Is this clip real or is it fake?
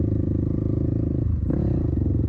real